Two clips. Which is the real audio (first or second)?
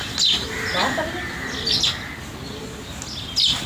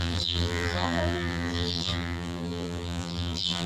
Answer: first